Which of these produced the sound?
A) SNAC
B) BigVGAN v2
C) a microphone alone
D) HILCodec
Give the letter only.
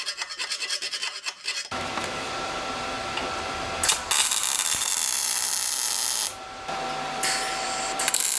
B